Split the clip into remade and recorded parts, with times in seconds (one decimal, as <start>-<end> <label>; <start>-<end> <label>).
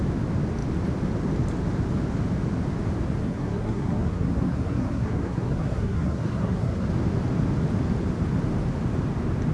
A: 0.0-3.2 recorded; 3.2-6.9 remade; 6.9-9.5 recorded